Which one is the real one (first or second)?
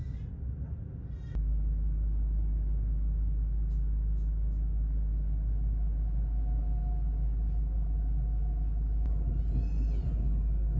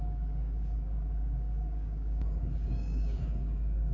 first